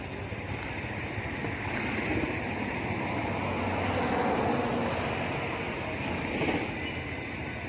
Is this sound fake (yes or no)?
no